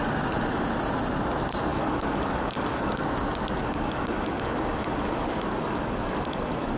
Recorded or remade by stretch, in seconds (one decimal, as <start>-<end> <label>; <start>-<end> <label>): 0.0-1.7 recorded; 1.7-3.0 remade; 3.0-3.6 recorded; 3.6-6.8 remade